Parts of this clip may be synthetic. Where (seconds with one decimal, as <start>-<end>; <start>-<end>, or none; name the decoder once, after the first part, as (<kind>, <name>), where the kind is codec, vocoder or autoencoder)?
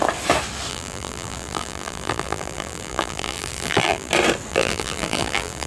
0.7-4.1 (vocoder, BigVGAN v2); 4.5-5.7